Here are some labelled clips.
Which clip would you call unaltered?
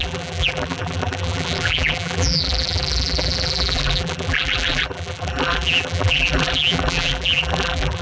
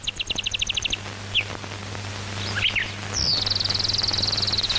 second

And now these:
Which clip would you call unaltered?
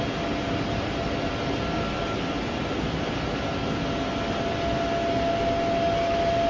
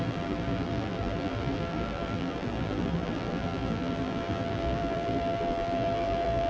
first